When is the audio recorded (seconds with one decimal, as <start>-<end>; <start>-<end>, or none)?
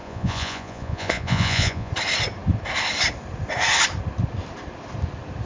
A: 1.9-5.5